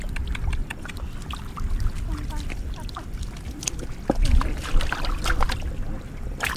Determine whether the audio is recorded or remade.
recorded